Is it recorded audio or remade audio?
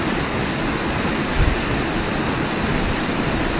recorded